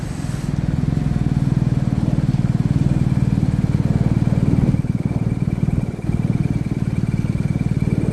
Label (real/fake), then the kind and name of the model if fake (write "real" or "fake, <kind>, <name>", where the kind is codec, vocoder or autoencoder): real